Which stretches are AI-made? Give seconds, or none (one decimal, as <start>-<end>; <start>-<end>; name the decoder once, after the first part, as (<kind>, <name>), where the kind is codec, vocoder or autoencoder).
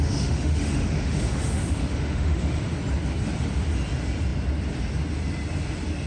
0.0-2.7 (autoencoder, DAC-VAE)